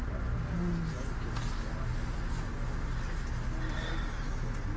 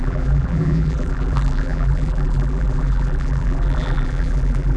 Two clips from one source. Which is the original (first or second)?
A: first